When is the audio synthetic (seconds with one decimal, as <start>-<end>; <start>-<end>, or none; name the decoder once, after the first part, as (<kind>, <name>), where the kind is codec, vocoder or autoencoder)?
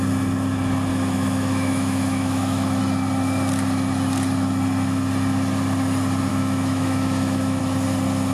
0.9-2.8 (autoencoder, DAC-VAE); 6.3-7.6